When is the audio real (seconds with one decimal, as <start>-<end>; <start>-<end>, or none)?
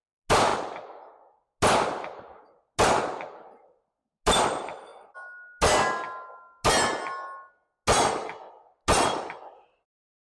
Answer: 0.0-10.3